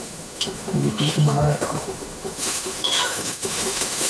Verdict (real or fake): fake